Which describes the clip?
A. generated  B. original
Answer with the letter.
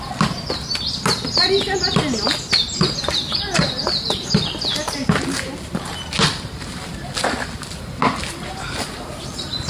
B